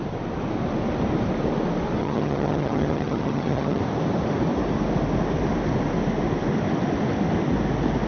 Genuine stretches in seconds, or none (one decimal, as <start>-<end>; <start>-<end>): 0.0-2.0; 3.8-8.1